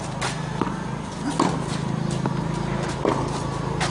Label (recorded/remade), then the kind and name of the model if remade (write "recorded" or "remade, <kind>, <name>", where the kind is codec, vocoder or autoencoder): recorded